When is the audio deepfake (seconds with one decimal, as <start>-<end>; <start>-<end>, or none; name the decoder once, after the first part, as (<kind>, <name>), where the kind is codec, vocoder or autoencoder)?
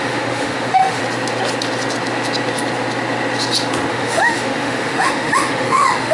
0.0-1.0 (autoencoder, DAC-VAE); 3.9-6.1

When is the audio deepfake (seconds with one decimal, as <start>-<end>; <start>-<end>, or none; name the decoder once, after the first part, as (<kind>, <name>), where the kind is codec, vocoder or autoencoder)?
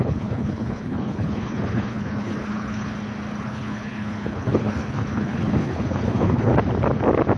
0.0-2.9 (codec, HILCodec); 3.4-6.5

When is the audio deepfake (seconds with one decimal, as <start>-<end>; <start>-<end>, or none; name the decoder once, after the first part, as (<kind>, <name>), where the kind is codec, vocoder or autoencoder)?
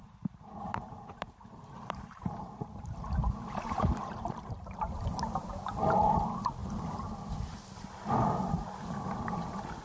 0.0-4.9 (vocoder, BigVGAN v2)